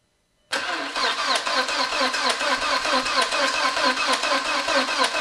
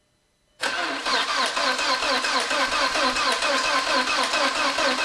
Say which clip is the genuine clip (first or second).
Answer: second